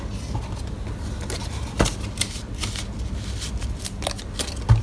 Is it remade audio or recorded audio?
recorded